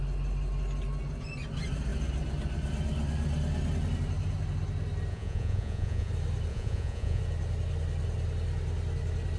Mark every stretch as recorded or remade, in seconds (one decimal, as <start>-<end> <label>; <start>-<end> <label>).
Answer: 0.0-5.1 recorded; 5.1-6.1 remade; 6.1-6.5 recorded; 6.5-7.2 remade; 7.2-9.4 recorded